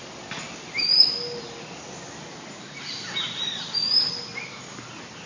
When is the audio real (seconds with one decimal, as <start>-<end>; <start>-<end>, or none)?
0.8-3.2; 4.6-5.3